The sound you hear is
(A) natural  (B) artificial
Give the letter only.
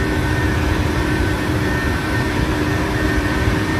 B